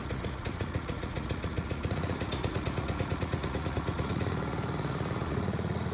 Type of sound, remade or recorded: remade